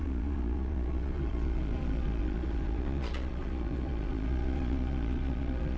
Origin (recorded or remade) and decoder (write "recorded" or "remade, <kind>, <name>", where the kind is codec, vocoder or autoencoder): remade, vocoder, Vocos